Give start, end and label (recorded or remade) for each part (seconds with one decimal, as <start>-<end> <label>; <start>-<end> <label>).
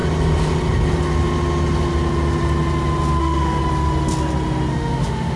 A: 0.0-3.2 recorded; 3.2-3.6 remade; 3.6-4.7 recorded; 4.7-5.4 remade